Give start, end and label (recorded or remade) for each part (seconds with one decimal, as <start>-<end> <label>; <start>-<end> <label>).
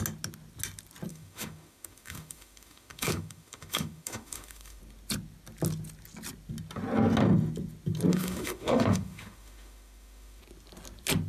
0.0-1.1 recorded; 1.1-4.8 remade; 4.8-8.1 recorded; 8.1-10.4 remade; 10.4-11.3 recorded